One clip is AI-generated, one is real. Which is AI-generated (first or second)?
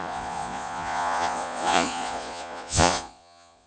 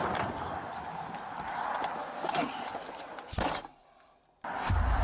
first